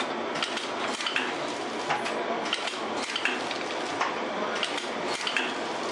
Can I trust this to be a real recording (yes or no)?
yes